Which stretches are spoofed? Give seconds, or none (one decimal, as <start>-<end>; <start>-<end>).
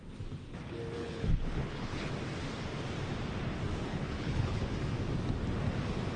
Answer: 1.0-2.1; 3.9-4.7